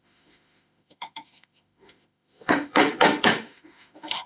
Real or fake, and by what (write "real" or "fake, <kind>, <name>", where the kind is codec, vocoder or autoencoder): fake, autoencoder, DAC-VAE